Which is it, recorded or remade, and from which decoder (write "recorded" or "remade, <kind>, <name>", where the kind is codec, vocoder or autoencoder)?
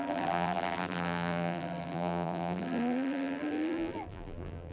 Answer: remade, vocoder, BigVGAN v2